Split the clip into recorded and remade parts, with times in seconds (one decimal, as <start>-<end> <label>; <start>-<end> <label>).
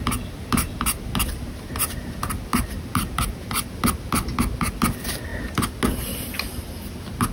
0.0-7.3 recorded